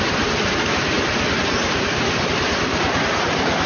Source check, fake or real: real